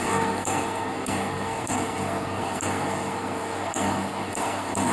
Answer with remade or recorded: remade